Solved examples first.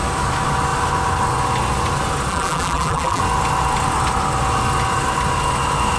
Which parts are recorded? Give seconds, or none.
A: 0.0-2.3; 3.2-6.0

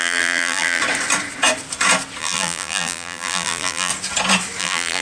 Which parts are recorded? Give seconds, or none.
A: 0.8-2.2; 3.9-4.6

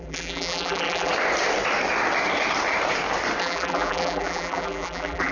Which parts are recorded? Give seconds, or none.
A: 1.1-3.4

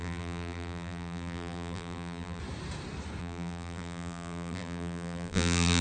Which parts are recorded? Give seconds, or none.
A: 2.4-3.2

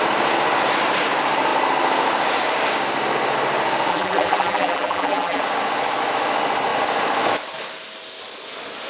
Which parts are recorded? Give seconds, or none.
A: 0.0-3.9; 5.4-8.9

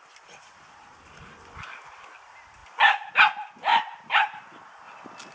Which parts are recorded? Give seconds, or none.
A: 0.0-3.7; 4.8-5.3